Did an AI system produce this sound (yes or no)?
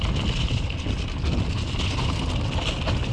no